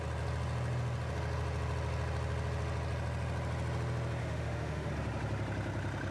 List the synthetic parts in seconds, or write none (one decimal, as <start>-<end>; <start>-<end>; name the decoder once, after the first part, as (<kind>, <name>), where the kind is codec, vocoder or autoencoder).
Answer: 4.2-4.9 (autoencoder, DAC-VAE)